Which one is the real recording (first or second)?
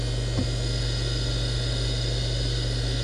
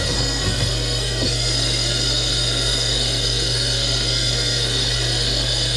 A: first